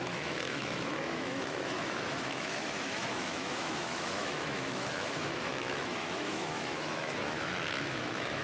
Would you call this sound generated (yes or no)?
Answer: yes